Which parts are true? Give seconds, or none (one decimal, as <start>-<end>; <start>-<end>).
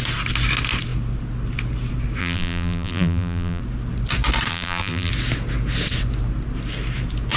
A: 0.0-2.2; 3.6-4.5; 5.1-7.4